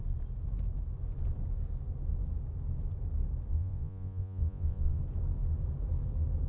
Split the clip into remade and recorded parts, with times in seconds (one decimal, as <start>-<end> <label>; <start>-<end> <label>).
0.0-3.5 recorded; 3.5-5.0 remade; 5.0-6.5 recorded